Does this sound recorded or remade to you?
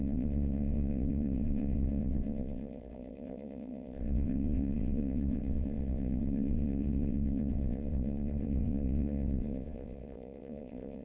remade